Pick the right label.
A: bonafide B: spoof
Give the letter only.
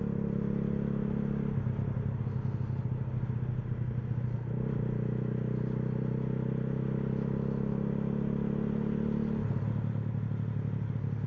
A